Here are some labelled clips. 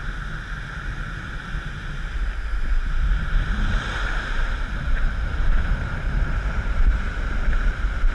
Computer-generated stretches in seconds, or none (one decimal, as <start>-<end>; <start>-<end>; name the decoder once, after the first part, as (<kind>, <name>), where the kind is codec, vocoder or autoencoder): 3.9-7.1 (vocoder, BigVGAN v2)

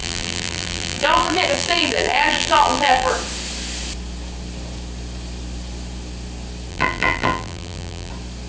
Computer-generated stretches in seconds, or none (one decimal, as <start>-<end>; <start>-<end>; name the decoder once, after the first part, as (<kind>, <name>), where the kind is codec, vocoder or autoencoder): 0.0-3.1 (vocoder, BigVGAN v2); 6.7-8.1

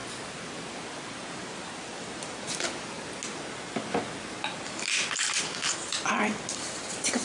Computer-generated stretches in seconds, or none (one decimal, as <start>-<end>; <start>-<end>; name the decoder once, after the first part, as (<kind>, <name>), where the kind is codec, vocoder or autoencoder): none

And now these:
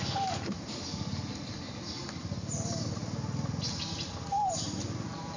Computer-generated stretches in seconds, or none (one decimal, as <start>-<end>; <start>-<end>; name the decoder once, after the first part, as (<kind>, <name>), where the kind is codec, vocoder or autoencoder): 4.3-5.4 (vocoder, BigVGAN v2)